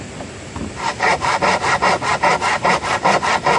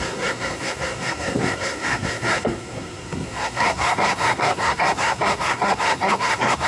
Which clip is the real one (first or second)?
first